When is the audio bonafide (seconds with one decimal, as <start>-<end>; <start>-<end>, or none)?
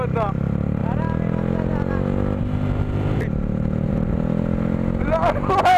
0.0-5.8